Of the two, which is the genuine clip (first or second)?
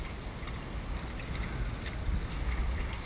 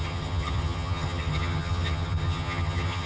first